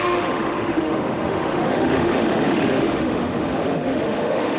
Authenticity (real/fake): fake